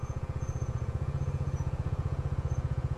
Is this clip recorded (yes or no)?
no